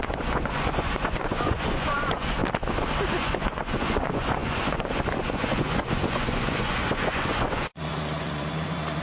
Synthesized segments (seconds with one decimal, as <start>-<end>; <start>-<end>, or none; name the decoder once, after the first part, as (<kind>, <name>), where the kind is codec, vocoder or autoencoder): 0.0-2.4 (vocoder, Vocos); 3.1-9.0

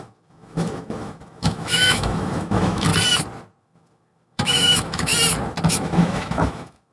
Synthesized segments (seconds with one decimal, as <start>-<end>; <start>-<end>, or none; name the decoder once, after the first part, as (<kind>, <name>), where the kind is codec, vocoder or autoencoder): 0.0-2.9 (autoencoder, DAC-VAE); 3.6-5.1; 5.7-6.9

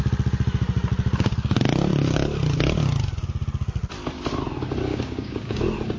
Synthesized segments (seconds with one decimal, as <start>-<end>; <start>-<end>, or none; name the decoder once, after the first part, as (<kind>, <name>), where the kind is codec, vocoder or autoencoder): 4.9-5.6 (codec, DAC)

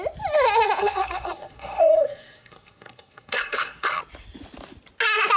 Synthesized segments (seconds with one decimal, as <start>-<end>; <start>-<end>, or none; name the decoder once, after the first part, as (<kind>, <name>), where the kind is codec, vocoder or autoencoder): 0.8-4.0 (codec, SNAC)

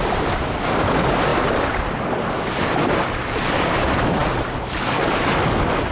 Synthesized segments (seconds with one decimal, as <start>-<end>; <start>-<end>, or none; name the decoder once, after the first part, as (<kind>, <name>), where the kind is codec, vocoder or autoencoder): none